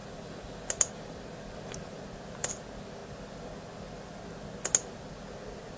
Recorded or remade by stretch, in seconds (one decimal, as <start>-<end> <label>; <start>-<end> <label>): 0.0-5.8 recorded